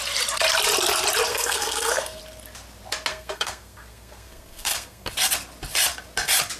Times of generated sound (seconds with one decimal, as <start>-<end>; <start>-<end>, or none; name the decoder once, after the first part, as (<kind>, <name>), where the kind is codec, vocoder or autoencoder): 1.3-2.2 (codec, SNAC); 3.1-5.1